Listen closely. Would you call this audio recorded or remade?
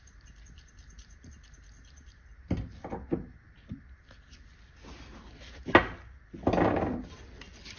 recorded